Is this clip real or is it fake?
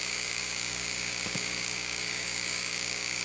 fake